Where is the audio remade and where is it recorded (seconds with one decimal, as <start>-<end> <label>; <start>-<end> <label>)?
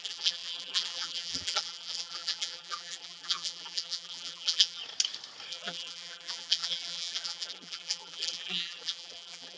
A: 0.0-4.8 remade; 4.8-5.5 recorded; 5.5-9.6 remade